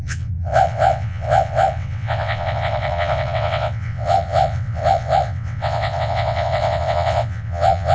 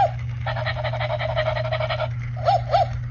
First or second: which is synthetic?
first